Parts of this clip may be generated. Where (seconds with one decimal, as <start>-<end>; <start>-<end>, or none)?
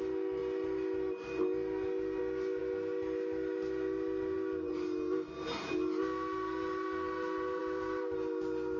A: none